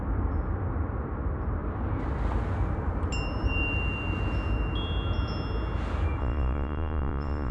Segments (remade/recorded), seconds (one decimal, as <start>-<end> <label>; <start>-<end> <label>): 0.0-6.2 recorded; 6.2-7.5 remade